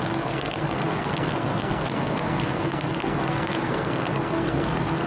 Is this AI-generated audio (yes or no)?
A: yes